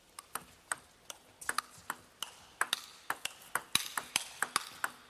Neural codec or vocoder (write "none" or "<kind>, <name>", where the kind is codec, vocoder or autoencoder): none